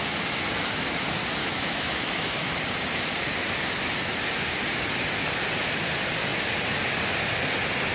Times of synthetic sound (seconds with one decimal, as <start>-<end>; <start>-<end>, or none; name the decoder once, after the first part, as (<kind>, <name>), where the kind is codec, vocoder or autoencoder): 1.4-2.6 (autoencoder, DAC-VAE)